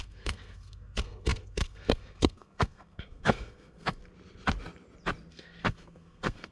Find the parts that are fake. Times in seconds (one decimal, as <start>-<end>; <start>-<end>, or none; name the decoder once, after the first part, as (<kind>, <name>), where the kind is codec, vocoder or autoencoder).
0.0-4.0 (codec, SNAC); 5.3-6.5